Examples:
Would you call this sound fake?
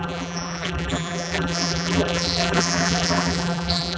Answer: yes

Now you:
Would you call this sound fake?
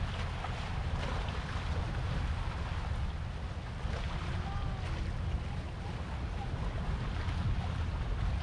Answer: no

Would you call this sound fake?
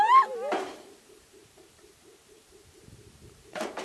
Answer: yes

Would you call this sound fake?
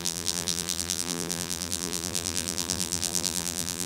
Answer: yes